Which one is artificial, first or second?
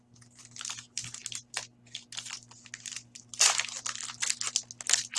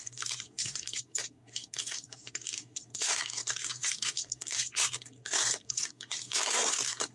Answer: second